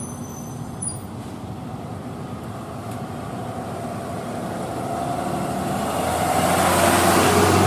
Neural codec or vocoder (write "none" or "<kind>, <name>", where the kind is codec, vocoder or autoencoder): none